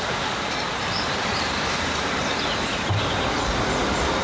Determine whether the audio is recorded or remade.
recorded